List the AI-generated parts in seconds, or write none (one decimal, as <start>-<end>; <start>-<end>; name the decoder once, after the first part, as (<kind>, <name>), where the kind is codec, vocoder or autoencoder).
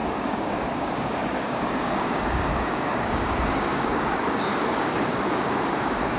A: 0.0-6.2 (codec, DAC)